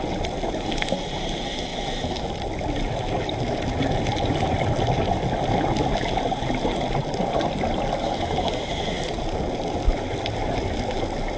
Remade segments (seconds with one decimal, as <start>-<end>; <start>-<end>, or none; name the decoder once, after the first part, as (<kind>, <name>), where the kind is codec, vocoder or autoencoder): none